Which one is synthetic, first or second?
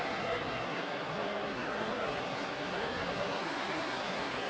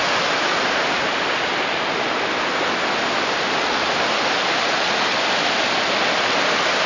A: first